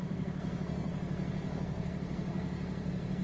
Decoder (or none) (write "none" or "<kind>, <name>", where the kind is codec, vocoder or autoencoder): codec, SNAC